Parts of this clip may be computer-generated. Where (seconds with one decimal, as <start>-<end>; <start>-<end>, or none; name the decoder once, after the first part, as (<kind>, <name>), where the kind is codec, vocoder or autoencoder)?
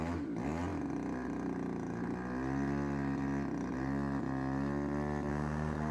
5.3-5.9 (codec, SNAC)